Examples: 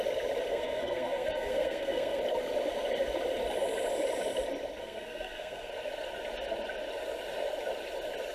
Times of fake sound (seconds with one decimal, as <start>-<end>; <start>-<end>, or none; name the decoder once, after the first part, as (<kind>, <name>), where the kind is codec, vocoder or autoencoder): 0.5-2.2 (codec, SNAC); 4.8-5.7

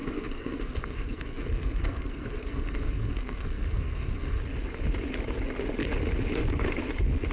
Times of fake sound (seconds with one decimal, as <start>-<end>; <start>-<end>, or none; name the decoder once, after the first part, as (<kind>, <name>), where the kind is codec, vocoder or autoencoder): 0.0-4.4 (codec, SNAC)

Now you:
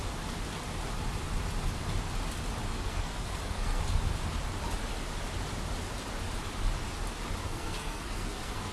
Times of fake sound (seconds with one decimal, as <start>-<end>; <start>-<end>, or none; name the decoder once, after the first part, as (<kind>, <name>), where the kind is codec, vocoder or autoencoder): 2.7-3.8 (codec, SNAC); 7.4-8.7

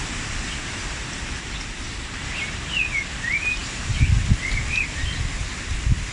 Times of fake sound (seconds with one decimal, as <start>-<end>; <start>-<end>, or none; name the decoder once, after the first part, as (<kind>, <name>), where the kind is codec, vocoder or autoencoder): none